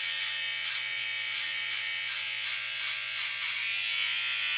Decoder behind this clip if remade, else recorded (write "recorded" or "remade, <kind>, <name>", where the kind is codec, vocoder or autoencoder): remade, vocoder, Vocos